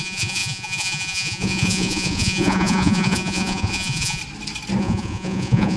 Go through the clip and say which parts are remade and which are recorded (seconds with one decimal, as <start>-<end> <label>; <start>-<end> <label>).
0.0-4.2 remade; 4.2-4.8 recorded; 4.8-5.8 remade